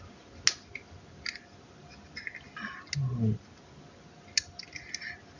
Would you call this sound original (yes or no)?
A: yes